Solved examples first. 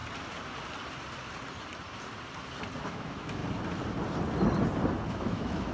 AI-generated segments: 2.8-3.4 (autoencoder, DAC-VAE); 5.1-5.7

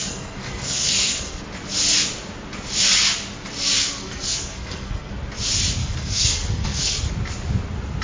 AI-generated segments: 0.0-1.4 (codec, SNAC); 3.8-5.1; 5.8-7.1

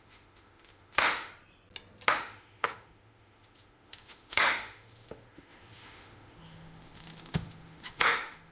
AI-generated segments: 0.0-1.3 (autoencoder, DAC-VAE); 2.1-8.5

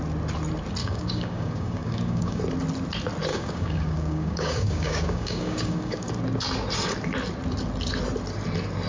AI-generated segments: 0.8-2.4 (codec, DAC); 3.3-6.1

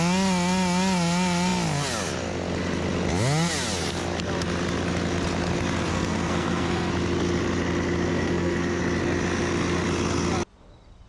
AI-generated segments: 5.9-6.9 (codec, SNAC); 8.1-8.8

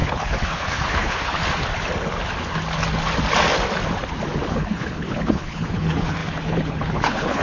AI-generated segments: 0.0-1.4 (codec, HILCodec); 4.5-7.4

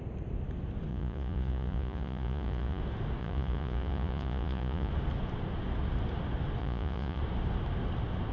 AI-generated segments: 0.9-2.8 (vocoder, Vocos); 3.2-4.9; 6.6-7.2